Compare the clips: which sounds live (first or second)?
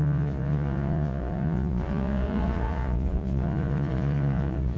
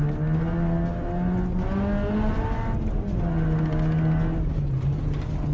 second